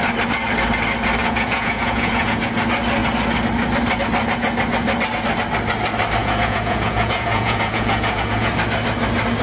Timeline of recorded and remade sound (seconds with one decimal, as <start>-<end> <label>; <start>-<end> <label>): 0.0-1.2 recorded; 1.2-2.4 remade; 2.4-6.2 recorded; 6.2-8.5 remade; 8.5-9.4 recorded

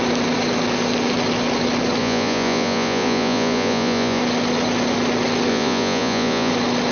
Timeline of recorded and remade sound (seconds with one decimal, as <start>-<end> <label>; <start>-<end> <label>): 0.0-2.0 recorded; 2.0-4.2 remade; 4.2-5.5 recorded; 5.5-6.5 remade; 6.5-6.9 recorded

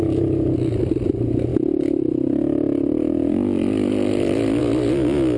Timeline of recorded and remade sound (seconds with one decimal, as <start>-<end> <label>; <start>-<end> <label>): 0.0-5.4 recorded

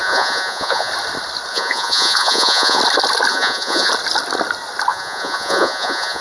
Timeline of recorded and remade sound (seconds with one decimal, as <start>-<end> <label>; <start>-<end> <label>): 0.0-0.9 remade; 0.9-1.5 recorded; 1.5-2.8 remade; 2.8-3.3 recorded; 3.3-3.9 remade; 3.9-4.9 recorded; 4.9-6.2 remade